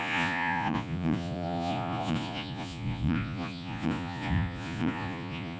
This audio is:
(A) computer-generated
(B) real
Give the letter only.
A